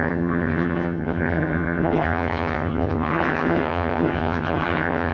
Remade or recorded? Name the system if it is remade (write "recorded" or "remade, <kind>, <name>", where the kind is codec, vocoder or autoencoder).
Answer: remade, vocoder, HiFi-GAN